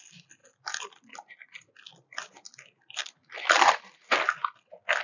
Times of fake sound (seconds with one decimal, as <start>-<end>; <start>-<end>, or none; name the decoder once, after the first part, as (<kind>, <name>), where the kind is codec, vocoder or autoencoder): none